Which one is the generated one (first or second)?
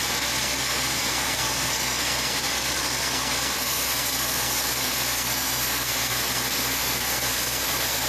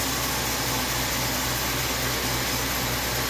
first